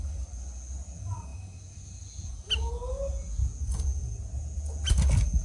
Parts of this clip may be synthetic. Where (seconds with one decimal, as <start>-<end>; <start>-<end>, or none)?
none